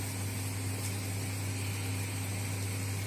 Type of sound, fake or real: real